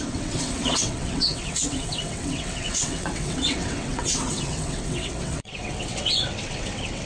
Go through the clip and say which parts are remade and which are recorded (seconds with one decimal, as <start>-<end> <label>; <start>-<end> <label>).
0.0-7.1 remade

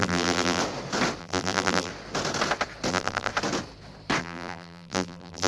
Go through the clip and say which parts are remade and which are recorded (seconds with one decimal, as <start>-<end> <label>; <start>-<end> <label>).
0.0-0.6 remade; 0.6-1.2 recorded; 1.2-1.9 remade; 1.9-2.9 recorded; 2.9-3.3 remade; 3.3-4.2 recorded; 4.2-5.5 remade

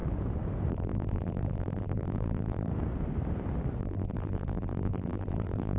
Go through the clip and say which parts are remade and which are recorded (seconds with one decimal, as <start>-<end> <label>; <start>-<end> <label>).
0.0-0.7 recorded; 0.7-2.7 remade; 2.7-3.8 recorded; 3.8-5.8 remade

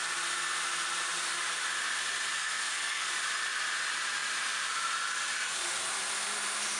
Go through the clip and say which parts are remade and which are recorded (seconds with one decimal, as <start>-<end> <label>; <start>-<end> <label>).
0.0-2.4 recorded; 2.4-3.1 remade; 3.1-6.8 recorded

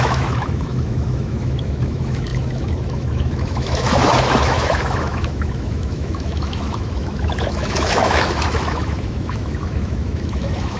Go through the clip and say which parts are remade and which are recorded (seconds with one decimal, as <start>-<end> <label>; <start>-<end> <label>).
0.0-10.8 remade